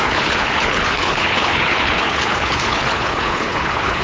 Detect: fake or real fake